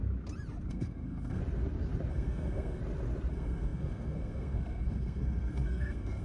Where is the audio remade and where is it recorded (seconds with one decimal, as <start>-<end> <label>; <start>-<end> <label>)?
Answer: 0.0-0.7 recorded; 0.7-1.4 remade; 1.4-2.1 recorded; 2.1-2.8 remade; 2.8-3.3 recorded; 3.3-6.2 remade